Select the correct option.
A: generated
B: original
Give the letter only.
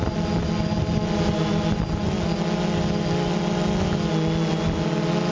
B